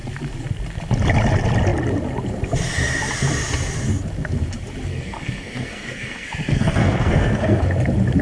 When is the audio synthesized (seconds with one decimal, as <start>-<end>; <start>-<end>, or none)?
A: 4.9-7.6